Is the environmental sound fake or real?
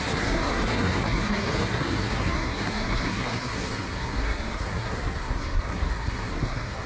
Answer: fake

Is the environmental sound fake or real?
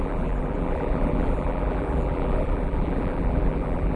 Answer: fake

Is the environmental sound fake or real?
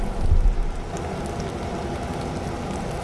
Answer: real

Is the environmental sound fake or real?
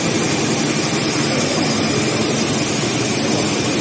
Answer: real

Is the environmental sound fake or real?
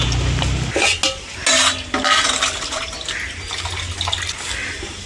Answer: real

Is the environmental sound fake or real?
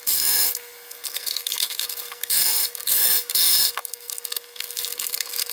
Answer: fake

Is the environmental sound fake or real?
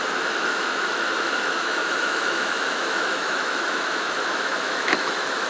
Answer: fake